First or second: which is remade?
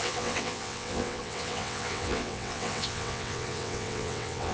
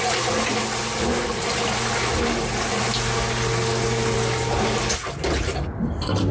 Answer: first